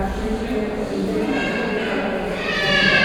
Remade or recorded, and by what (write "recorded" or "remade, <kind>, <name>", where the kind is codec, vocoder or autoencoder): recorded